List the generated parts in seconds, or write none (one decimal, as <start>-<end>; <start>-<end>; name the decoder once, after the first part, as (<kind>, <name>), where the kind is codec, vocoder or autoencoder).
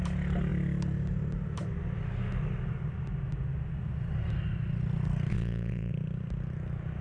5.3-5.9 (vocoder, WaveNeXt)